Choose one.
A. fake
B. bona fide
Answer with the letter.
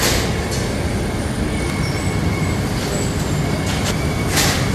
B